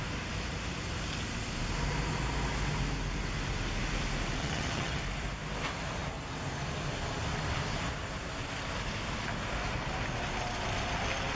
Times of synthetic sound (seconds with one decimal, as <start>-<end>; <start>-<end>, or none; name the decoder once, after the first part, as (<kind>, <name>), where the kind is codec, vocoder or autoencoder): 4.4-5.0 (vocoder, HiFi-GAN)